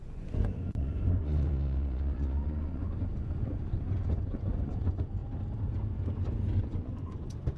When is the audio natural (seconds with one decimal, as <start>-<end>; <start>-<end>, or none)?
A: 5.2-6.6